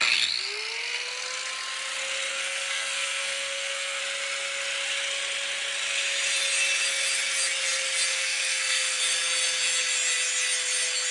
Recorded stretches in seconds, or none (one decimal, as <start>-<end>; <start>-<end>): 0.0-2.3; 4.0-8.1; 9.0-11.1